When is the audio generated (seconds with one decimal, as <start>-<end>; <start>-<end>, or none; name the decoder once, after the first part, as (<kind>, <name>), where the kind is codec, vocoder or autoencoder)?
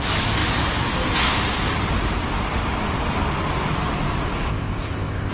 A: 4.5-5.3 (codec, ZipCodec)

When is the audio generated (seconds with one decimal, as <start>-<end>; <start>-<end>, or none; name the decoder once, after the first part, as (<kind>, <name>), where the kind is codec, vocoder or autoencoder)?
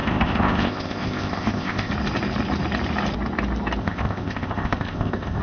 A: 0.0-1.9 (codec, ZipCodec); 3.8-5.4